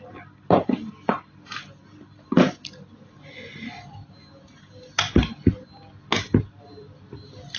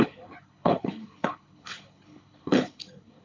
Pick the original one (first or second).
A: first